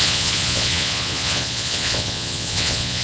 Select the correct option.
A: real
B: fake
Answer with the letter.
B